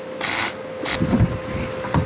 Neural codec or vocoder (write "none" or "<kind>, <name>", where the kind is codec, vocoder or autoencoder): none